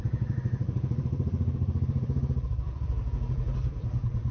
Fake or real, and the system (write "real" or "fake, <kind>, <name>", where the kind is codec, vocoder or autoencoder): fake, vocoder, BigVGAN v2